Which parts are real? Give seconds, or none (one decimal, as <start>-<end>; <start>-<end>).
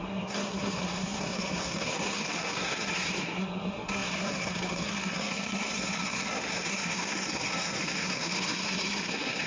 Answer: none